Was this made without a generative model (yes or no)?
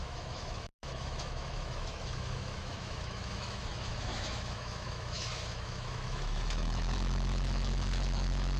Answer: no